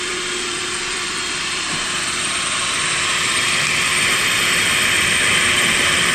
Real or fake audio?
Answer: fake